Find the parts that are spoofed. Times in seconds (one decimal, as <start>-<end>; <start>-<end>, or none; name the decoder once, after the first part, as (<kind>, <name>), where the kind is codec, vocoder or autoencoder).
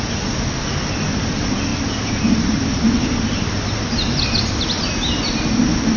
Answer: none